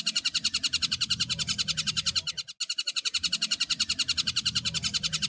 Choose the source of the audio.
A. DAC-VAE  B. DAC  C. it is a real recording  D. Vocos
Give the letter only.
C